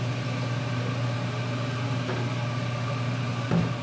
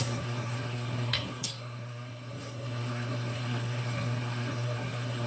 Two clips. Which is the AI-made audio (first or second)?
second